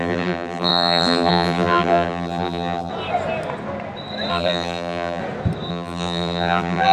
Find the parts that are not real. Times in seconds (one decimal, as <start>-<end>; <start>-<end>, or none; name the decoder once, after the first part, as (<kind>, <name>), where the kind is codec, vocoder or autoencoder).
0.0-2.9 (vocoder, BigVGAN v2); 4.3-5.2; 5.7-6.9

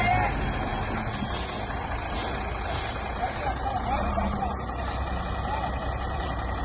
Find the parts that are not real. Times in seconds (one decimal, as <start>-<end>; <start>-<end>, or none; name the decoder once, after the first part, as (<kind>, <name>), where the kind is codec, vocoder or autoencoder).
2.2-6.6 (vocoder, BigVGAN v2)

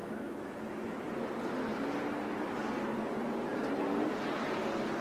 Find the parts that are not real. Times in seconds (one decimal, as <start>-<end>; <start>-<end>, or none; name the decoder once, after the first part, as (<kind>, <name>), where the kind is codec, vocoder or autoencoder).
0.0-1.1 (autoencoder, DAC-VAE)

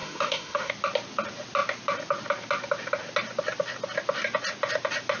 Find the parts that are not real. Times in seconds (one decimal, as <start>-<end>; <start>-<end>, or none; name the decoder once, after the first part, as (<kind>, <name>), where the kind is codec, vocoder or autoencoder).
0.0-0.7 (autoencoder, DAC-VAE)

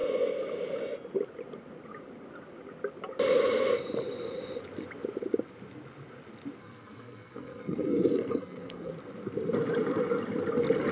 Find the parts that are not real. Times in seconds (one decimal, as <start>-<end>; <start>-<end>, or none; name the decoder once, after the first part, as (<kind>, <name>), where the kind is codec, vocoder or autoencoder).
6.6-8.9 (codec, SNAC)

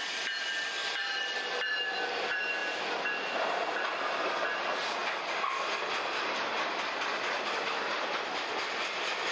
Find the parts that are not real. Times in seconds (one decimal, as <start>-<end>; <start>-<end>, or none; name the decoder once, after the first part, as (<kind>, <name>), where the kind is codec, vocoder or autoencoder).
0.0-2.6 (vocoder, BigVGAN v2); 4.4-5.0; 7.5-9.3

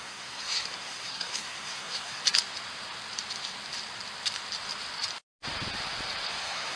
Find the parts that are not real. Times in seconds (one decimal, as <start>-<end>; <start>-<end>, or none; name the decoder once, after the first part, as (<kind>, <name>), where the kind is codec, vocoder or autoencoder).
0.0-2.2 (codec, SNAC); 6.3-6.8